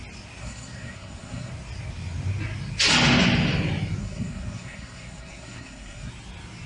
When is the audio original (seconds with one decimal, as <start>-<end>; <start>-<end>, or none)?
0.0-0.4; 1.5-4.0; 6.1-6.7